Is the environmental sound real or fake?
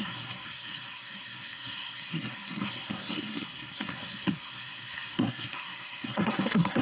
fake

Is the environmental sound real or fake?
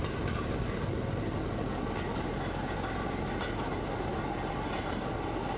real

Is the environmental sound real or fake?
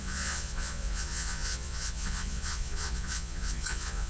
fake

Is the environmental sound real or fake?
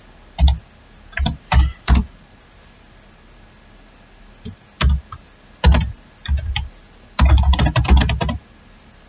real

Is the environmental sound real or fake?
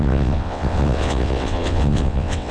fake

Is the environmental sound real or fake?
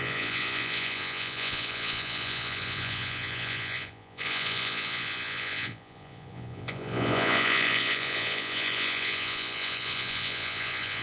fake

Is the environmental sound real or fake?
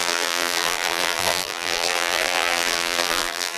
fake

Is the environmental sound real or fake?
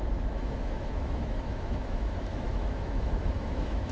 fake